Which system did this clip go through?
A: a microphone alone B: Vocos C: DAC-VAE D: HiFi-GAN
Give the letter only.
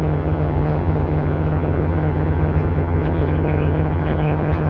D